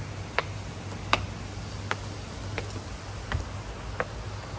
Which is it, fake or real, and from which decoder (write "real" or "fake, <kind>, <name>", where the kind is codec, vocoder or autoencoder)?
real